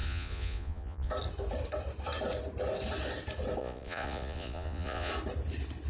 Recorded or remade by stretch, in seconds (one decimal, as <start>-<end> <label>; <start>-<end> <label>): 0.0-1.1 remade; 1.1-3.6 recorded; 3.6-5.1 remade; 5.1-5.9 recorded